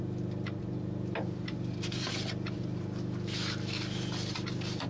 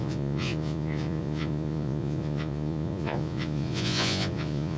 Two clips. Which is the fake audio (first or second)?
second